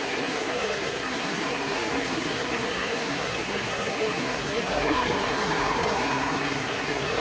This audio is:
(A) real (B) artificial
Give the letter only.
B